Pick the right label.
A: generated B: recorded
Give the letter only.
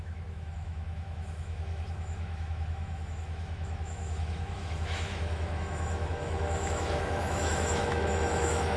A